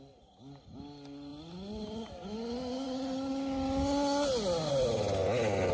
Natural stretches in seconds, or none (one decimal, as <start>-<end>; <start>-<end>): 0.0-5.7